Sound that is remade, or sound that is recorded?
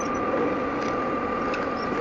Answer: recorded